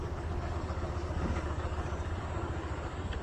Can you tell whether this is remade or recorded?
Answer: remade